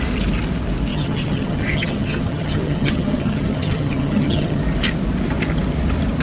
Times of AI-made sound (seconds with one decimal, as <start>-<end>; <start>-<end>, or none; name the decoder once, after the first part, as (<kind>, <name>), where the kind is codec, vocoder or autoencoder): 0.9-4.6 (vocoder, HiFi-GAN)